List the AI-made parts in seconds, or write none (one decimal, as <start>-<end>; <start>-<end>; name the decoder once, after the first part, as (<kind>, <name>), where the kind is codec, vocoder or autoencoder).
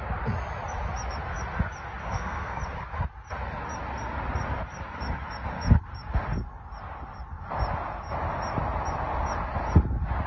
2.0-2.6 (codec, SNAC)